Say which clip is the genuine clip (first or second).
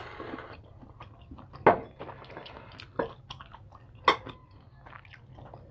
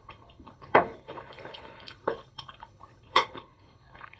first